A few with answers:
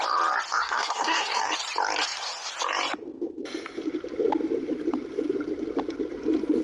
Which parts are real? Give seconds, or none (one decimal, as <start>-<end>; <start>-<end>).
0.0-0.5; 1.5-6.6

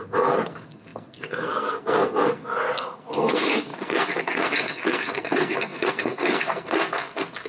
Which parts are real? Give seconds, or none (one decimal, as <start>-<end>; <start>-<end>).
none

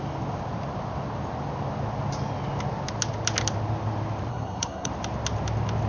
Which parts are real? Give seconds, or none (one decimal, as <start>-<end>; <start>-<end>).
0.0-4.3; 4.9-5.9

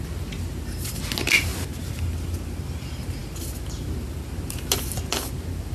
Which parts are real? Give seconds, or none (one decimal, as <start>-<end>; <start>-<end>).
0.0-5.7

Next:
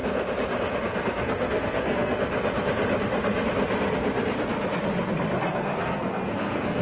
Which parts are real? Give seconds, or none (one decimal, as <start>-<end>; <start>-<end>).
0.0-0.8; 2.3-5.5